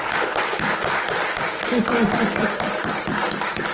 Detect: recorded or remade recorded